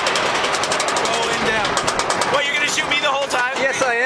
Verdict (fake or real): real